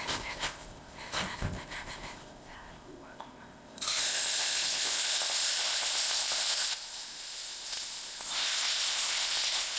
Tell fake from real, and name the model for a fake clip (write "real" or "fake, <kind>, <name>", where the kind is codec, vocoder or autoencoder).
fake, codec, ZipCodec